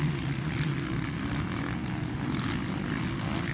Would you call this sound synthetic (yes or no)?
no